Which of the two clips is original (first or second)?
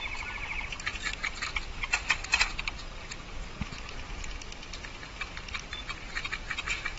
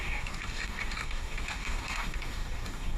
first